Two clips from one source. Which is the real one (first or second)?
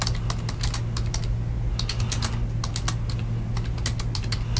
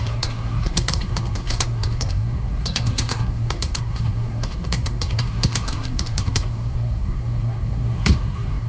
first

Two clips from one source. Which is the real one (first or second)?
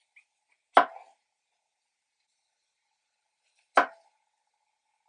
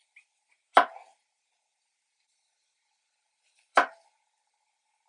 first